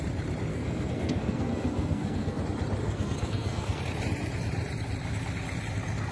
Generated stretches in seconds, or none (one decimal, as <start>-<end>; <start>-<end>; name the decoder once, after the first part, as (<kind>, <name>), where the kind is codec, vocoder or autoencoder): 0.5-2.4 (codec, SNAC); 2.8-3.8